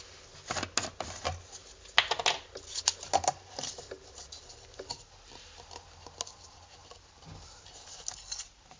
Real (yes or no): yes